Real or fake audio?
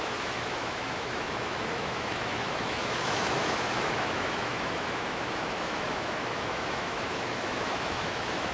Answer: fake